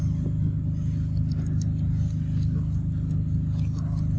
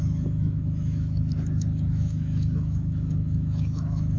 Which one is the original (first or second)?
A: first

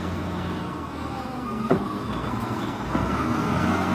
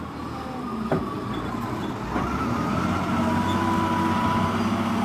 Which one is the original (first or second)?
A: second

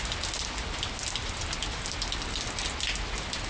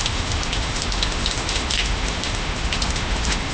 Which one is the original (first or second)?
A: first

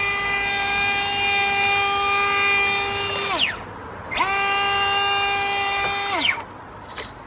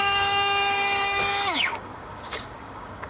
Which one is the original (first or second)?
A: first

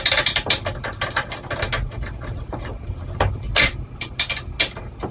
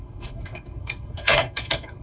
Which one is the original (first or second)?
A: first